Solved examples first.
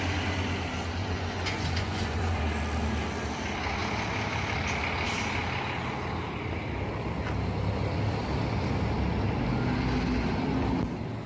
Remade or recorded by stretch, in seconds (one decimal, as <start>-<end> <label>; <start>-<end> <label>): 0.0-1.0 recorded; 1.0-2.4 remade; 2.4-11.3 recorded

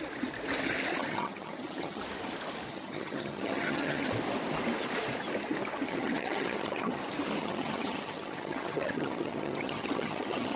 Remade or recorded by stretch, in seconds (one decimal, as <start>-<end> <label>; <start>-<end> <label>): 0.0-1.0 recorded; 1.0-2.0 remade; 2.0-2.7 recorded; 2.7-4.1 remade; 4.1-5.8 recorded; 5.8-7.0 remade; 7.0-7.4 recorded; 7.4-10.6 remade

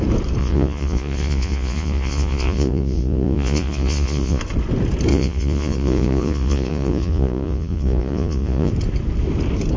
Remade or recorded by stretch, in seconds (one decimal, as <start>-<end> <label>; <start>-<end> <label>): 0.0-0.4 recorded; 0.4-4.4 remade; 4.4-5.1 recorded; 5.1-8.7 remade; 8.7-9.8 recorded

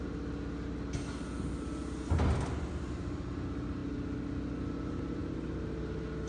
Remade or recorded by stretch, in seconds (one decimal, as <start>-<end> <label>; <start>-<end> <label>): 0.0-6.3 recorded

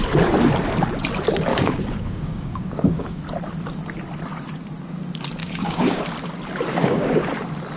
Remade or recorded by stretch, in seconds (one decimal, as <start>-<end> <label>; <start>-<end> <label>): 0.0-1.5 recorded; 1.5-3.2 remade; 3.2-5.4 recorded; 5.4-6.0 remade; 6.0-6.8 recorded; 6.8-7.3 remade; 7.3-7.8 recorded

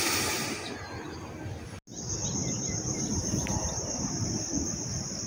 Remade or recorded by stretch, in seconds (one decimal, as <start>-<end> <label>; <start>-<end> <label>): 0.0-2.4 recorded; 2.4-4.1 remade; 4.1-5.3 recorded